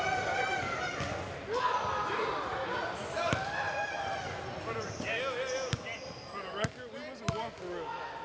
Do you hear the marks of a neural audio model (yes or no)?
no